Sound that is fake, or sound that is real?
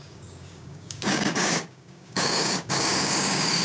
fake